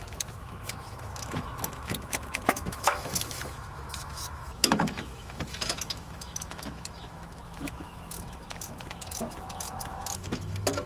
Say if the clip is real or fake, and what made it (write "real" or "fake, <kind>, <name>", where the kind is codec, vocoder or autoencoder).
fake, autoencoder, DAC-VAE